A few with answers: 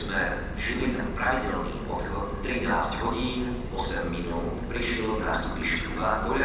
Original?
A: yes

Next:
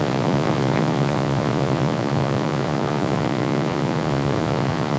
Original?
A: no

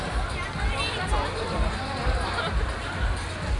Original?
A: yes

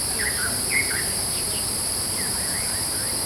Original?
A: no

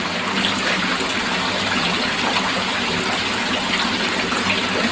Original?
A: yes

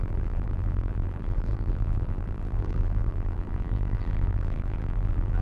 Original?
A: no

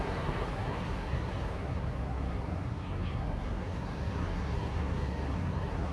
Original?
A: no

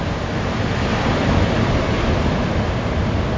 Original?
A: yes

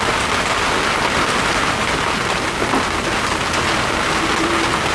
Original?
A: yes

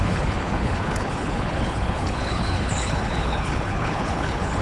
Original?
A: no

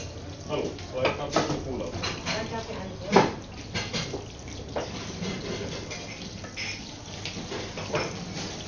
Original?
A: yes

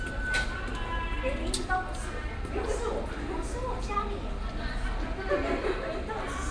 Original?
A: yes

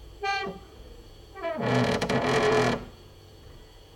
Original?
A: no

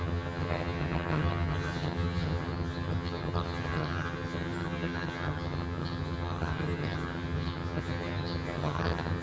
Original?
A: no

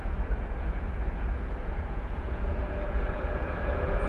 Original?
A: no